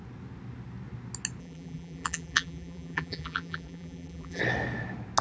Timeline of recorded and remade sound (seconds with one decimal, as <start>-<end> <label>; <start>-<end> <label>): 0.0-1.4 recorded; 1.4-4.4 remade; 4.4-5.2 recorded